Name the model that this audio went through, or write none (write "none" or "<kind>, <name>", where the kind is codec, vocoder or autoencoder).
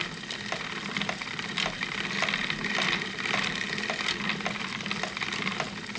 none